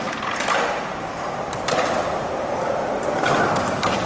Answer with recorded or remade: remade